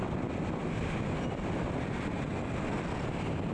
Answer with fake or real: real